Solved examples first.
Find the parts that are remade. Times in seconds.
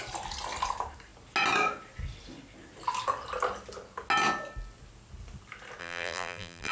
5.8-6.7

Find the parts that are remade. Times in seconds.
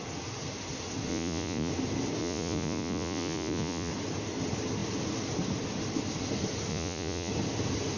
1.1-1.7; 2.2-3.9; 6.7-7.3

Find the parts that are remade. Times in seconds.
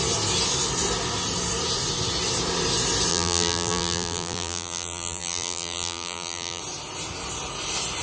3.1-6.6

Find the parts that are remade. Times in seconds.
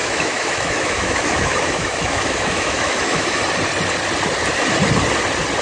0.0-3.4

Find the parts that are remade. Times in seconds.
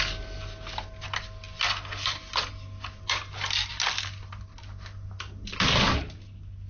none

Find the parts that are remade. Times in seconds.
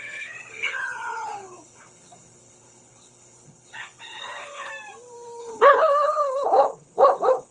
0.0-4.7; 5.4-7.5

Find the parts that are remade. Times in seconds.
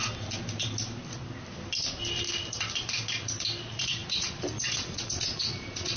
3.6-6.0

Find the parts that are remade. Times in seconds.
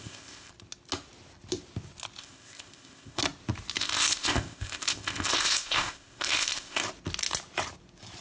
0.0-0.5; 2.2-3.2; 3.8-6.8